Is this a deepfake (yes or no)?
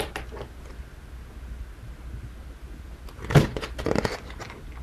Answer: no